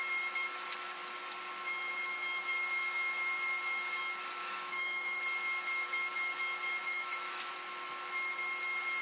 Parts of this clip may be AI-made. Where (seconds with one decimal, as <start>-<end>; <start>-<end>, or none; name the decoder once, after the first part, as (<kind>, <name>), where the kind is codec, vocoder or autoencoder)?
4.4-5.2 (autoencoder, DAC-VAE); 6.8-7.5